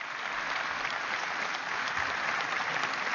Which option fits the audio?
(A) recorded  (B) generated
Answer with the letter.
A